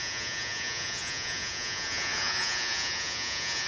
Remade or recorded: remade